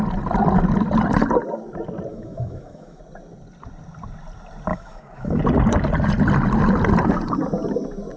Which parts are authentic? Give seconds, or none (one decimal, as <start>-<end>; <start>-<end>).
0.0-2.1; 3.0-4.7; 5.4-8.2